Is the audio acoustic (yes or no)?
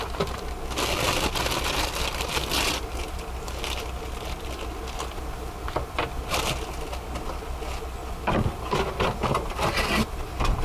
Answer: yes